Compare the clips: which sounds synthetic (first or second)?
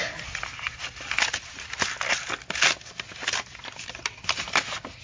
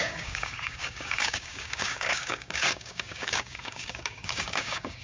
second